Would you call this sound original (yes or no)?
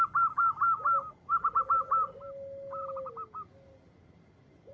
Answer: yes